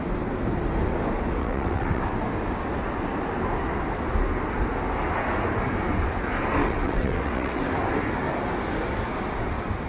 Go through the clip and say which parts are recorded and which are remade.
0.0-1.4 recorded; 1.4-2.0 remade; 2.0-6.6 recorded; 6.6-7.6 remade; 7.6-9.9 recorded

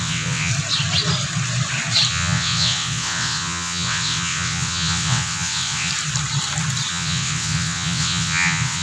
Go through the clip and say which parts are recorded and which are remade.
0.0-0.5 remade; 0.5-2.1 recorded; 2.1-5.9 remade; 5.9-6.9 recorded; 6.9-8.8 remade

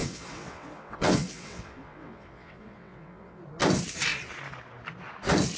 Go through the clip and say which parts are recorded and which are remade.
0.0-3.4 remade; 3.4-5.6 recorded

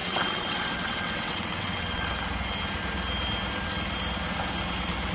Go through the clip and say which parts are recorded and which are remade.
0.0-2.1 remade; 2.1-5.1 recorded

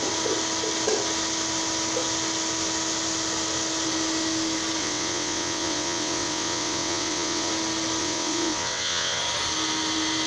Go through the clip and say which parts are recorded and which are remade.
0.0-4.8 recorded; 4.8-7.5 remade; 7.5-8.0 recorded; 8.0-9.2 remade; 9.2-10.3 recorded